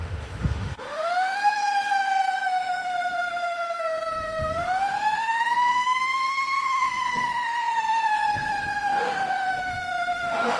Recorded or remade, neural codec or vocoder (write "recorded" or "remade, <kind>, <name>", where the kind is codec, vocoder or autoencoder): remade, autoencoder, DAC-VAE